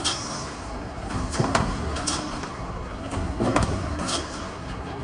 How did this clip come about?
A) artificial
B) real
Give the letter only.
A